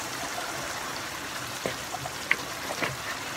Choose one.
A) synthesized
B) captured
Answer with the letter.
A